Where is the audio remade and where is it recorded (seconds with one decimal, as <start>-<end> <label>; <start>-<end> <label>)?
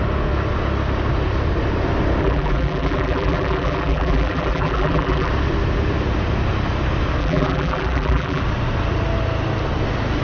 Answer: 0.0-2.2 recorded; 2.2-5.3 remade; 5.3-7.2 recorded; 7.2-8.4 remade; 8.4-10.2 recorded